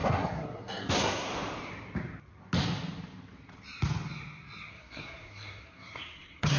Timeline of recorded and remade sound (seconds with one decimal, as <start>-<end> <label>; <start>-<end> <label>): 0.0-1.3 remade; 1.3-4.7 recorded; 4.7-6.6 remade